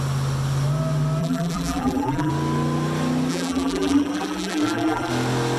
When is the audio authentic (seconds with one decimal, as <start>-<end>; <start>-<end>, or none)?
0.0-1.2; 2.3-3.3; 5.1-5.6